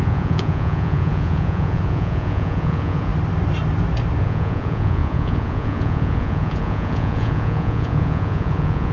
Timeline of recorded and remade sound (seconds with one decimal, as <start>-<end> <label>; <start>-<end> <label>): 0.0-3.1 remade; 3.1-4.2 recorded; 4.2-8.9 remade